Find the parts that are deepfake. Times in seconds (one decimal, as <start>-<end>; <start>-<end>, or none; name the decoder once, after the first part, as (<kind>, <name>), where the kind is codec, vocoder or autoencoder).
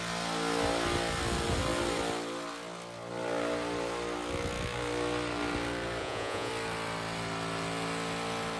6.0-6.5 (vocoder, Vocos)